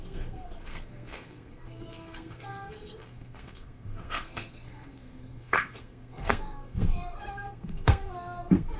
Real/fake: fake